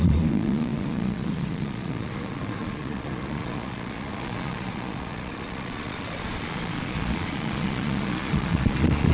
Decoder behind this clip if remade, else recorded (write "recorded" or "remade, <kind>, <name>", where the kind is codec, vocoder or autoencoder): remade, vocoder, Vocos